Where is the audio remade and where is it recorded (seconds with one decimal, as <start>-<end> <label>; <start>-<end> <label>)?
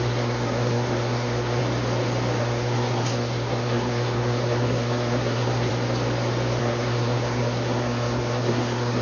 0.0-1.6 remade; 1.6-2.4 recorded; 2.4-5.7 remade; 5.7-6.6 recorded; 6.6-9.0 remade